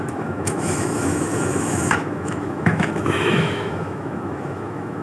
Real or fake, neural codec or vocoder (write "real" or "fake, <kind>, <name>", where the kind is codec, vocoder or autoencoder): fake, autoencoder, DAC-VAE